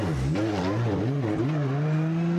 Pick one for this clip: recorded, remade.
recorded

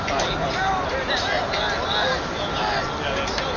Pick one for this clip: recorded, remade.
recorded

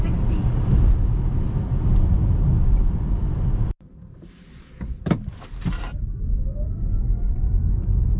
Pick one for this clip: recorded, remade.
remade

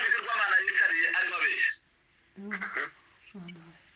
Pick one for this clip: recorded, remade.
recorded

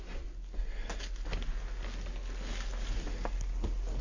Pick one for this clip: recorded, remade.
recorded